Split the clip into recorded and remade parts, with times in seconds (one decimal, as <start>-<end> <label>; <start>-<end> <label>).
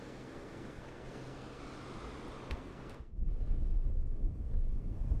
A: 0.0-1.6 remade; 1.6-2.5 recorded; 2.5-5.2 remade